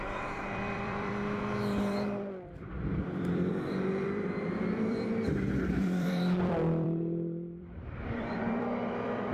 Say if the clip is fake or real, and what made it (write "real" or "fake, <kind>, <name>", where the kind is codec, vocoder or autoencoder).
fake, vocoder, BigVGAN v2